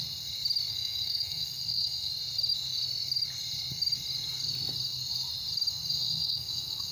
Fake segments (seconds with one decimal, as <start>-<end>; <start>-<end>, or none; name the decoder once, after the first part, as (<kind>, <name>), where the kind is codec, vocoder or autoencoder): 0.7-2.1 (codec, SNAC); 5.9-6.9